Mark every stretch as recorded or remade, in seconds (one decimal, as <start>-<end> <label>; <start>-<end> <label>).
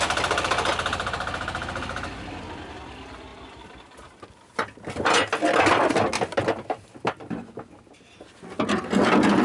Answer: 0.0-9.4 recorded